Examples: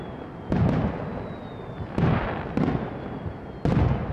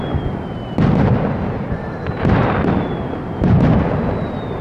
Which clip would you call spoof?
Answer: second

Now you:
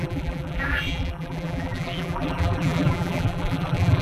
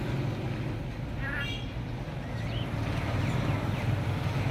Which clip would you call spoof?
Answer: first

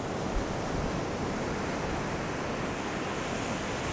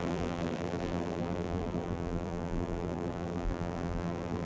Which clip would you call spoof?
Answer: second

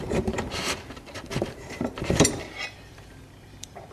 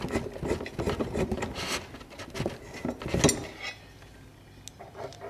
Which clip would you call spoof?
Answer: first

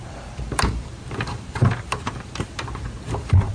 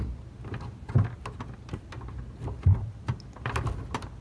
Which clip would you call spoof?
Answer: first